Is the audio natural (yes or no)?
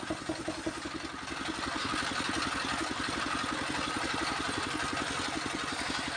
yes